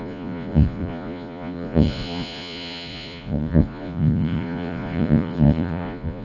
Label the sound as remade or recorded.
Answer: remade